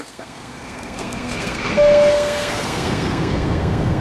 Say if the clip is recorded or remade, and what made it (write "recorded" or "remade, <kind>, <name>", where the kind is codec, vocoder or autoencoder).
remade, codec, SNAC